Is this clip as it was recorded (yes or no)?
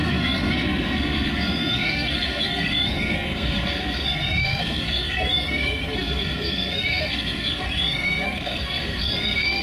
no